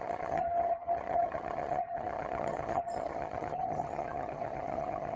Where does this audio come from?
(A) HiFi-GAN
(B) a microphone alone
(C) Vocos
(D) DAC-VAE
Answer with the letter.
A